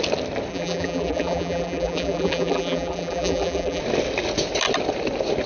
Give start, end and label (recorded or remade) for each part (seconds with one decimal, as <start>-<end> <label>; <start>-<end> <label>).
0.0-0.5 recorded; 0.5-3.8 remade; 3.8-5.5 recorded